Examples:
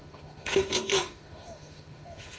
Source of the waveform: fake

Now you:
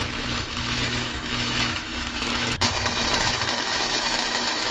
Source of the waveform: fake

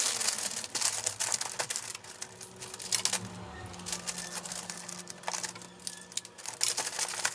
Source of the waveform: real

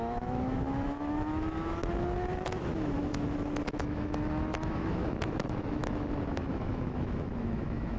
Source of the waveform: fake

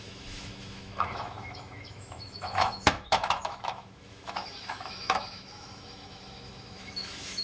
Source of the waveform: fake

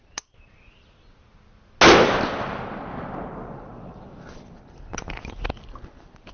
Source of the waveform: real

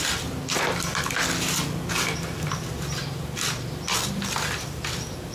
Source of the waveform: real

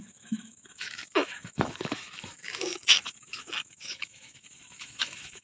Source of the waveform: fake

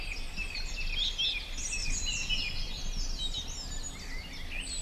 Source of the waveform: real